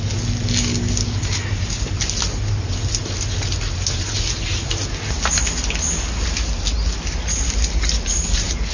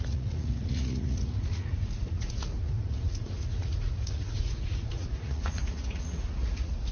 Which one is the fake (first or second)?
second